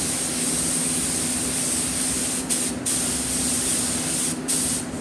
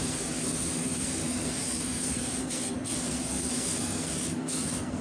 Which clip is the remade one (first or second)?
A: second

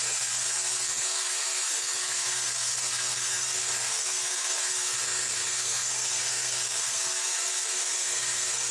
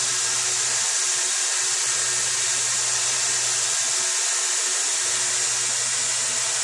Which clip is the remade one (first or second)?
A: first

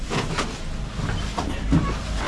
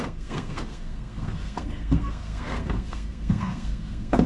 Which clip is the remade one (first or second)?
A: second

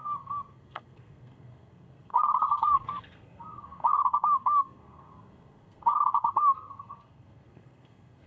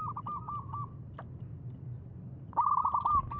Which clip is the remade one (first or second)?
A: first